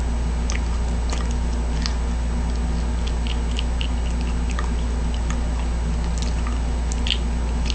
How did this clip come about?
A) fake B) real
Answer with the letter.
B